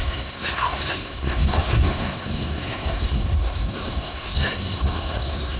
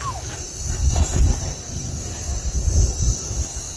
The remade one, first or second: first